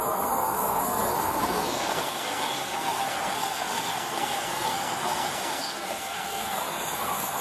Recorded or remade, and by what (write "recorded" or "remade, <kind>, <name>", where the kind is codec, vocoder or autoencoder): remade, codec, SNAC